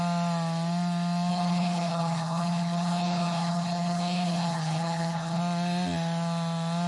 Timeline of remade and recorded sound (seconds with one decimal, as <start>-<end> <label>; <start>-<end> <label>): 0.0-1.3 recorded; 1.3-5.4 remade; 5.4-6.9 recorded